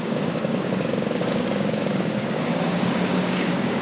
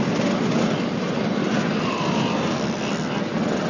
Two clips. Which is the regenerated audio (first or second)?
first